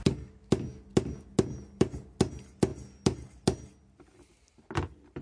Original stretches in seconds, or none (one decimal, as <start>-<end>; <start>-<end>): 0.0-5.2